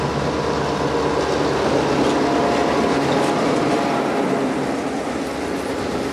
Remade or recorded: recorded